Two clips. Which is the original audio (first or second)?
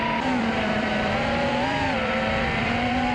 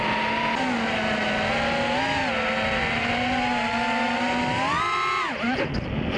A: second